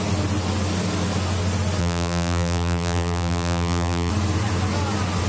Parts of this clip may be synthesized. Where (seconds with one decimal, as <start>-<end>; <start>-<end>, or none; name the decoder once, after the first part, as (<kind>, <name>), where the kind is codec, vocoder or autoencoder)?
1.8-4.1 (vocoder, BigVGAN v2)